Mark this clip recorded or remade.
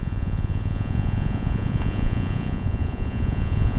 remade